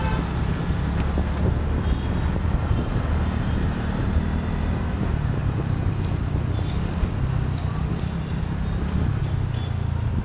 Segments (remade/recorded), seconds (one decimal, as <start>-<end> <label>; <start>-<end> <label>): 0.0-5.4 recorded; 5.4-9.2 remade; 9.2-10.2 recorded